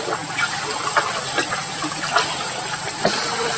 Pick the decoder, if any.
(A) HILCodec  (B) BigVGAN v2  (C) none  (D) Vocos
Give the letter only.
C